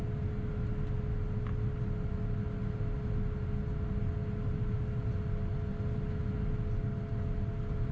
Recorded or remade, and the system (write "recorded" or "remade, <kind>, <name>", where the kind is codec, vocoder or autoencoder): recorded